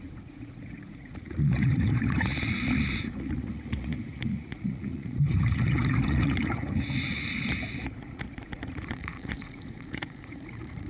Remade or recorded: remade